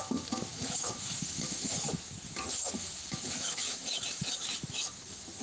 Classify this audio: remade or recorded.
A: remade